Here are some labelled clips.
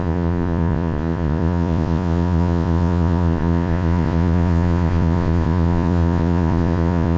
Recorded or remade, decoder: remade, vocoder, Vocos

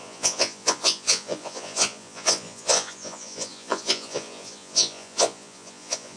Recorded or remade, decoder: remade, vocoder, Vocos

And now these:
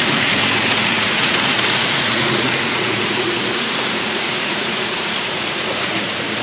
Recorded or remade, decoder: remade, vocoder, Vocos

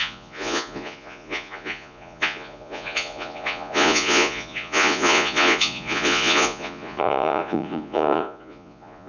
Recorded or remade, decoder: remade, vocoder, Vocos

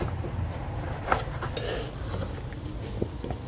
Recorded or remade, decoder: recorded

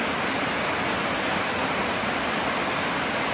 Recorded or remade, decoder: recorded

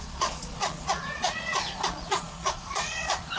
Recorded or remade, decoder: remade, vocoder, Vocos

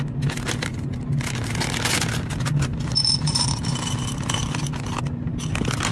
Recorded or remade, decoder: recorded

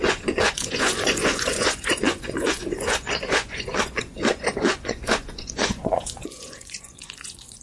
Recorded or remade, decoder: remade, vocoder, Vocos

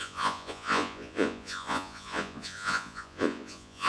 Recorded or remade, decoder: remade, vocoder, Vocos